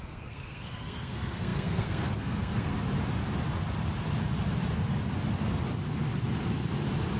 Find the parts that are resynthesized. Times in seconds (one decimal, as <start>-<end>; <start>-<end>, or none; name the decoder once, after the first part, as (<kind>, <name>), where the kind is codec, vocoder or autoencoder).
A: 0.0-2.7 (codec, SNAC)